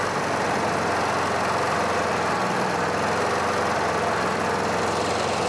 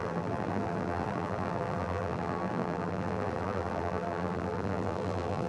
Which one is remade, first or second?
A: second